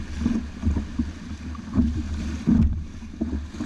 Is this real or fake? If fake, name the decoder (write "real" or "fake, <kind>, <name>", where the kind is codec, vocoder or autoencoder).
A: real